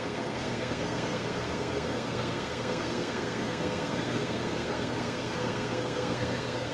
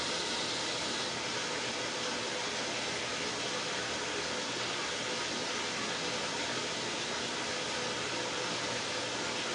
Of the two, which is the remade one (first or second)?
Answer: first